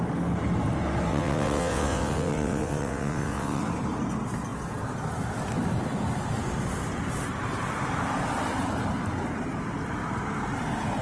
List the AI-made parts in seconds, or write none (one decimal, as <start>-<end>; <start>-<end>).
1.1-3.6

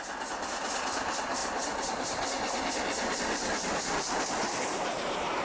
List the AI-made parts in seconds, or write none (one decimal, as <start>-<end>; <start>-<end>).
0.0-1.4; 4.6-5.4

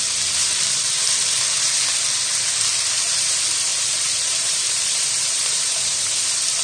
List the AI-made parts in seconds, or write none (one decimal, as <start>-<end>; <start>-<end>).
3.7-6.1